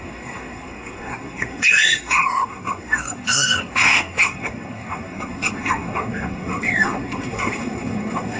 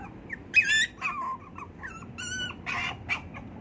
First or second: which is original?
second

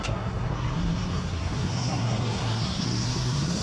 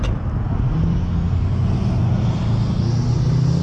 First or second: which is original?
second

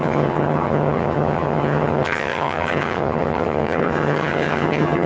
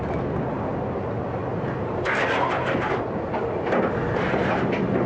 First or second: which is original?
second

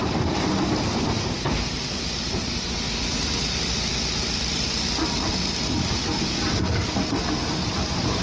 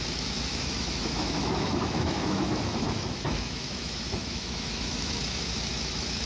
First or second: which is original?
first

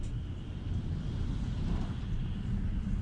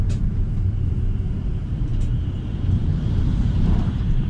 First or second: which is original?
first